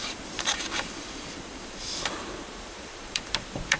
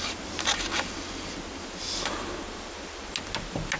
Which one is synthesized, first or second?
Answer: first